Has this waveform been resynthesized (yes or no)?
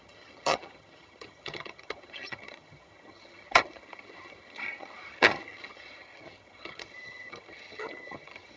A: yes